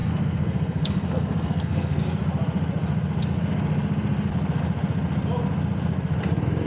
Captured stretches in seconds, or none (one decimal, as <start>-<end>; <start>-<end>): 2.0-6.7

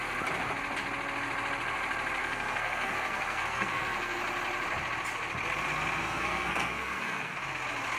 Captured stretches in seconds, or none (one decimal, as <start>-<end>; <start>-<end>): 0.0-2.2; 4.2-6.0; 7.4-8.0

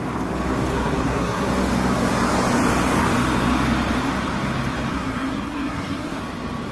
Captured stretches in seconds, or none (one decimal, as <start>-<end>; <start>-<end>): 0.0-0.7; 1.5-4.9; 6.2-6.7

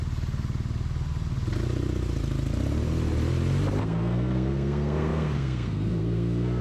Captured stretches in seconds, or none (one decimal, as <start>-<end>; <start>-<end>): 0.0-3.8

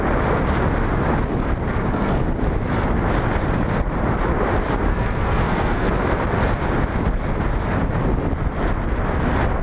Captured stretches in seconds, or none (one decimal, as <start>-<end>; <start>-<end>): 0.0-1.7; 2.2-4.9; 5.9-9.6

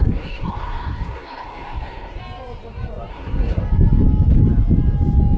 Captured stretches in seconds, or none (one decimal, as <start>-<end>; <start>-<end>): 2.2-3.1; 3.6-5.4

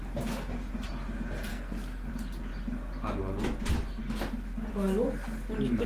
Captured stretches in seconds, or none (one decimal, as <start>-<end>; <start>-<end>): 0.0-1.5; 2.1-5.9